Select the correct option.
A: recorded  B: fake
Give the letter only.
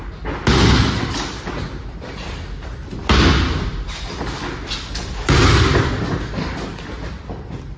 A